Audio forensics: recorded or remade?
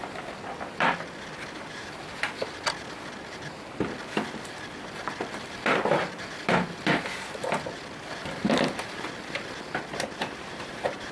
remade